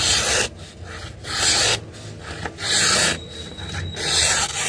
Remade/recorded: recorded